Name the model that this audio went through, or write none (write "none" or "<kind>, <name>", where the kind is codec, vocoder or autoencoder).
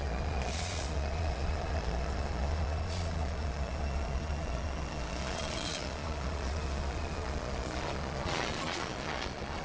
vocoder, Vocos